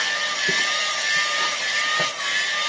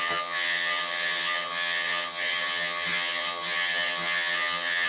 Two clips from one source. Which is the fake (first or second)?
second